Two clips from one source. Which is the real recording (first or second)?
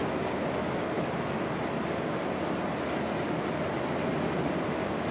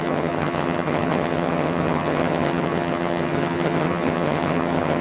first